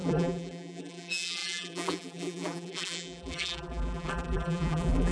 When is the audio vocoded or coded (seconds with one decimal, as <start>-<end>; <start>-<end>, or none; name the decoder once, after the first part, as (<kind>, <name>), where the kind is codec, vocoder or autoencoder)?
0.0-5.1 (vocoder, BigVGAN v2)